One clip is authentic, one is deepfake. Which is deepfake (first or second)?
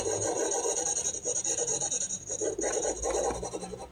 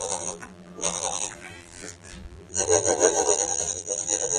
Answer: second